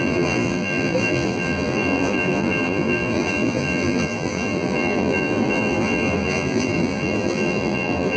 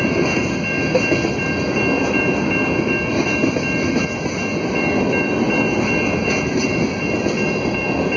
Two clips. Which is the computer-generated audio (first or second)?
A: first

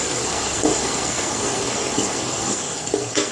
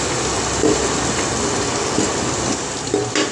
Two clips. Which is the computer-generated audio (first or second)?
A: first